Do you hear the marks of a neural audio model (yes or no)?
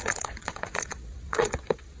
yes